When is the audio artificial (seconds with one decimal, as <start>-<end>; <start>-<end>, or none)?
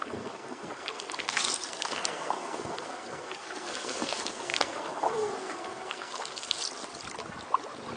0.0-6.6